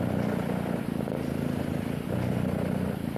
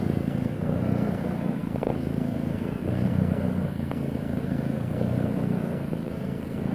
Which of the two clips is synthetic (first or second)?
second